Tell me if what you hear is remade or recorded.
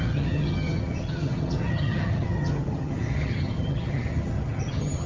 remade